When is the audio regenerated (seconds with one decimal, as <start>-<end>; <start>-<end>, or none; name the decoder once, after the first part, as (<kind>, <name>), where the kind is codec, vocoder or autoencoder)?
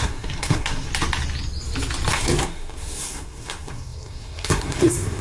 0.0-0.9 (codec, SNAC); 2.1-5.2